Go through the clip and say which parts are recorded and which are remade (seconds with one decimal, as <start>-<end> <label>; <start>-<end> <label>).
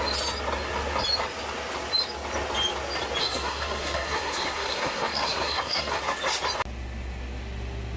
0.0-3.2 recorded; 3.2-6.0 remade; 6.0-8.0 recorded